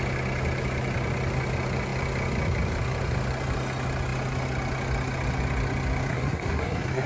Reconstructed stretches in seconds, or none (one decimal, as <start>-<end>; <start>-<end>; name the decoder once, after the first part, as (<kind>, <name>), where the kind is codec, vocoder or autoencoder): 6.1-7.1 (codec, SNAC)